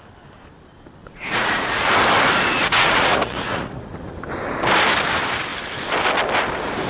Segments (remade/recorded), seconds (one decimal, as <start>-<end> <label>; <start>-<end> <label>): 0.0-1.0 recorded; 1.0-1.7 remade; 1.7-2.5 recorded; 2.5-3.9 remade; 3.9-6.9 recorded